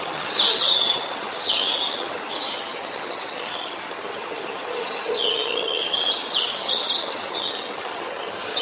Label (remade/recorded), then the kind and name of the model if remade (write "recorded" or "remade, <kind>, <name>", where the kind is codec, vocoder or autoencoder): remade, vocoder, HiFi-GAN